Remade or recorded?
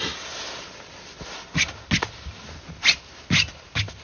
recorded